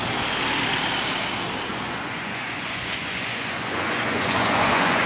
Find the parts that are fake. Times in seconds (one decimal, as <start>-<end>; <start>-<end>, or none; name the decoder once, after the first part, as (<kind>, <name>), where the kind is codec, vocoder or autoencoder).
1.7-5.1 (vocoder, Vocos)